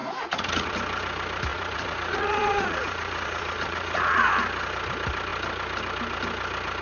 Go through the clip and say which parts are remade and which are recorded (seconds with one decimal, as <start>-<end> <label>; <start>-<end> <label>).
0.0-0.7 remade; 0.7-1.5 recorded; 1.5-4.3 remade; 4.3-6.8 recorded